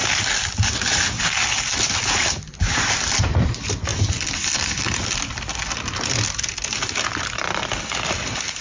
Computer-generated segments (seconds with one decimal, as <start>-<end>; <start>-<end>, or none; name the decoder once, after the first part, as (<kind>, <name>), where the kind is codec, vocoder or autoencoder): none